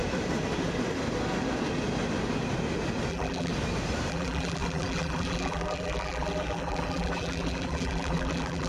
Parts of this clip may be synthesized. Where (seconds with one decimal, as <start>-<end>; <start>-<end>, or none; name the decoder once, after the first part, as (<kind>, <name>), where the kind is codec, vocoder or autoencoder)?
3.1-3.5 (vocoder, BigVGAN v2); 4.1-8.7